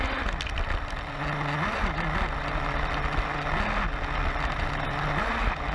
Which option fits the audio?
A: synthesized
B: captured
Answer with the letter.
B